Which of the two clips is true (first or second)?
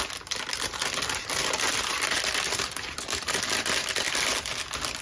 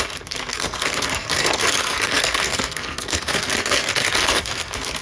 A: first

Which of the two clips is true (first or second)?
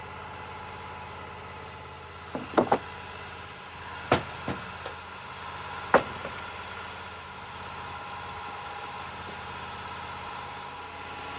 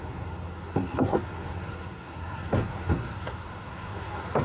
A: first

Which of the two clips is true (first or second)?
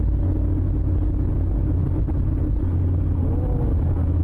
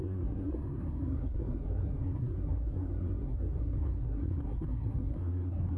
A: first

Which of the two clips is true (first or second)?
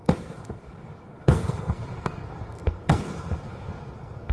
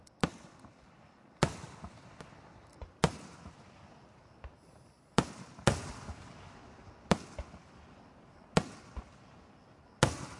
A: second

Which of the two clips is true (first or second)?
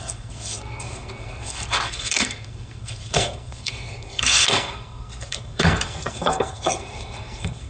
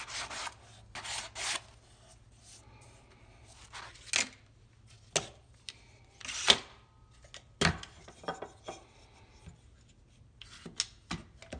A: second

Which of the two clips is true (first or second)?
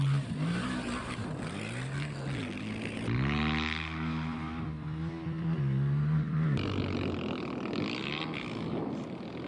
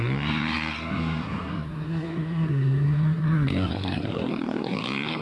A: first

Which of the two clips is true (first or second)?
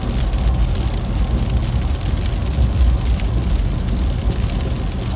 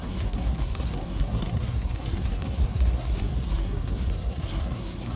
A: first